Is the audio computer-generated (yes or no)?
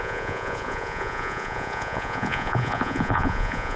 yes